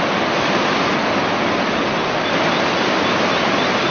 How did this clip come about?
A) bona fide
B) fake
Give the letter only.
A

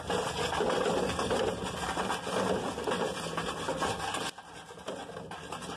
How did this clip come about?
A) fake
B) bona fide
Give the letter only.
B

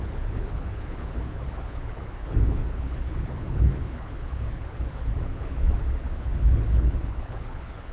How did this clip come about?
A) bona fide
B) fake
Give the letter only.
B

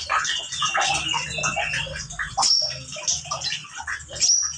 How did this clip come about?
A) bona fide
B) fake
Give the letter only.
A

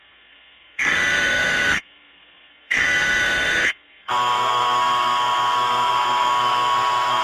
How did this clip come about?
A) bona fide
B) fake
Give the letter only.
B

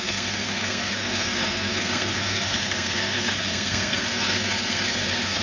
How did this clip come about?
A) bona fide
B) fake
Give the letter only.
B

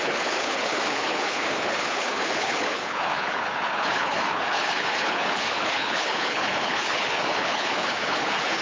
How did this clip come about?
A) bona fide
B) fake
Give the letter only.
B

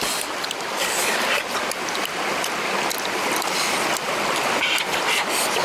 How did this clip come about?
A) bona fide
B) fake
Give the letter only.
A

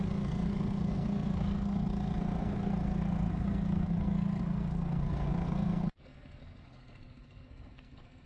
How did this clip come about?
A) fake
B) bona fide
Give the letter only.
A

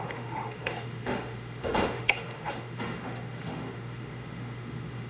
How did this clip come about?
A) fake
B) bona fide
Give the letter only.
A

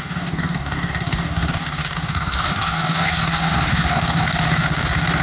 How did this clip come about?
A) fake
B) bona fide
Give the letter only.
A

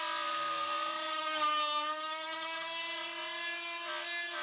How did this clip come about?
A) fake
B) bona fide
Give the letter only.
B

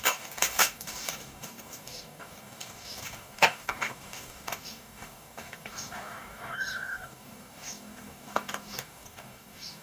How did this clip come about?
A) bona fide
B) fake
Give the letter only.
B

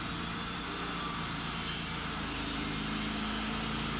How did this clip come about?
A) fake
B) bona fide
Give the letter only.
B